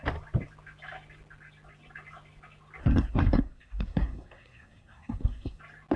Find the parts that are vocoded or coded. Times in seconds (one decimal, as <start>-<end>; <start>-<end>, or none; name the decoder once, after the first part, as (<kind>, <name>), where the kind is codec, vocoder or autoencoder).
2.8-5.6 (codec, SNAC)